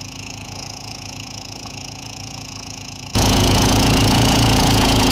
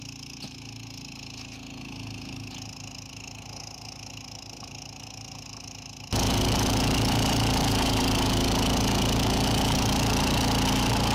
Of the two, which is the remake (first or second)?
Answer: first